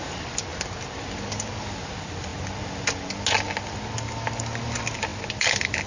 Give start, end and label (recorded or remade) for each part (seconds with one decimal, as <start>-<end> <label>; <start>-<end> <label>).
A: 0.0-5.9 recorded